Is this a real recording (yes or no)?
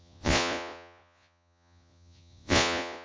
no